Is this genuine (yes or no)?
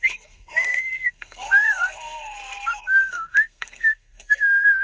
no